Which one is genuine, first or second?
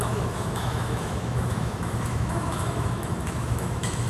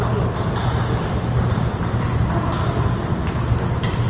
second